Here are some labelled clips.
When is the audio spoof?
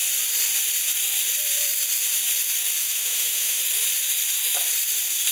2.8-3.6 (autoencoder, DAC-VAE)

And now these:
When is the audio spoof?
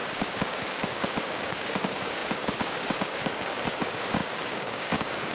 0.0-5.3 (codec, DAC)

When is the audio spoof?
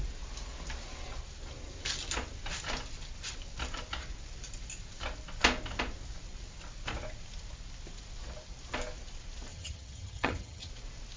9.5-10.7 (vocoder, HiFi-GAN)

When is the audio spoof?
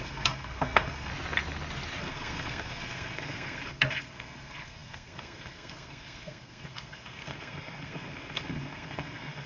0.0-1.1 (codec, SNAC); 2.0-9.5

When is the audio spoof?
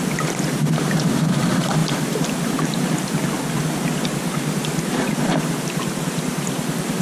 0.0-1.8 (vocoder, BigVGAN v2); 5.6-7.0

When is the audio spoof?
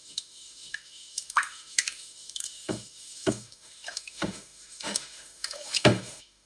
0.0-6.5 (autoencoder, DAC-VAE)